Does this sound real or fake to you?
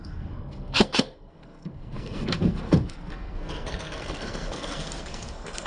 fake